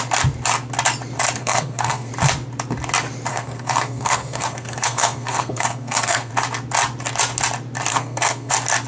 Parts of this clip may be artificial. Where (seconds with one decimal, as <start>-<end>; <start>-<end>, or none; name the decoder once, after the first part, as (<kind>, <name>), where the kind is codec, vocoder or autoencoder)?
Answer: 1.4-2.1 (codec, SNAC); 3.3-6.3; 7.9-8.5